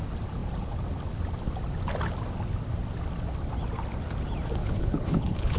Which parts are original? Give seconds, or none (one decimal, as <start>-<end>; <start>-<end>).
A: 0.0-4.6